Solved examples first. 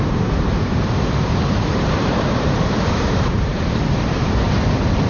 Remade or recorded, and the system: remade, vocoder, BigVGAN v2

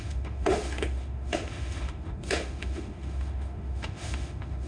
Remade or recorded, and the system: remade, autoencoder, DAC-VAE